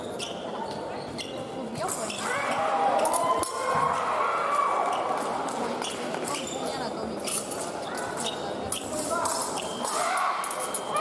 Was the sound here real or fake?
real